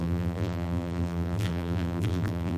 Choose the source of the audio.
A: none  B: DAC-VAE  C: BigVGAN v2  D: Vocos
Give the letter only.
C